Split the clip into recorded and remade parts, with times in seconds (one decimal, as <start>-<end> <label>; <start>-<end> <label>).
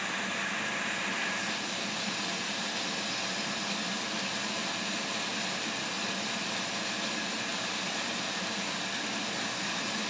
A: 0.0-7.5 recorded; 7.5-9.2 remade; 9.2-10.1 recorded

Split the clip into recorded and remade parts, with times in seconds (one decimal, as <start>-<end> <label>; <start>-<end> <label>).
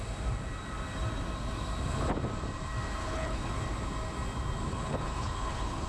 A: 0.0-3.0 recorded; 3.0-3.5 remade; 3.5-4.7 recorded; 4.7-5.9 remade